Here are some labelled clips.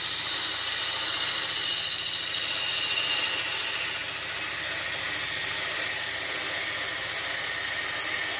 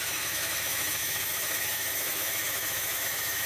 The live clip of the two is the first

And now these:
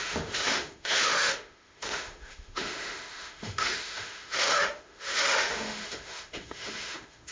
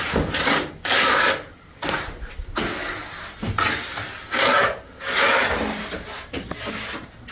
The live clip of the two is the second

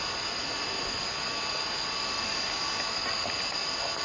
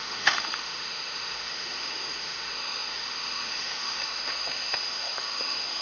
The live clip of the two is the first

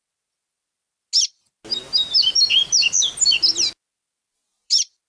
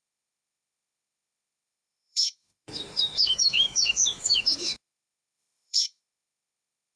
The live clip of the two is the first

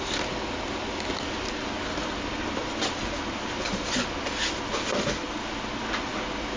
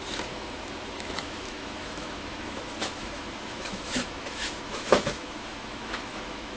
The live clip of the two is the first